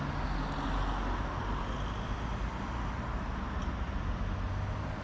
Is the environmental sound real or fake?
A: real